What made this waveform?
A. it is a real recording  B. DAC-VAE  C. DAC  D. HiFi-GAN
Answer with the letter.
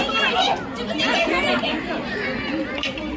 A